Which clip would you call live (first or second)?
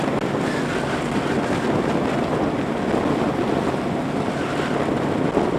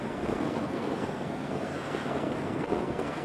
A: first